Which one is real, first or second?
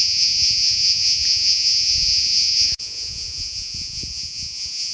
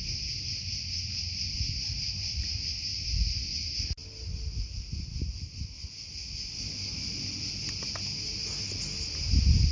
second